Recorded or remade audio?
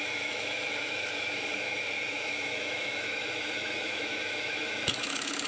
remade